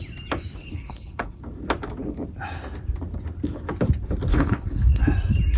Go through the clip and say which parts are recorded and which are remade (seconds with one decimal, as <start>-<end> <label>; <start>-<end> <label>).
0.0-0.6 recorded; 0.6-1.4 remade; 1.4-4.3 recorded; 4.3-5.0 remade; 5.0-5.6 recorded